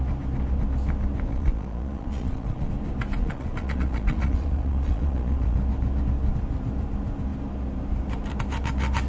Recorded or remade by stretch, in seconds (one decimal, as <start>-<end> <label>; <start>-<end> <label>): 0.0-1.3 recorded; 1.3-2.7 remade; 2.7-3.2 recorded; 3.2-5.6 remade; 5.6-9.1 recorded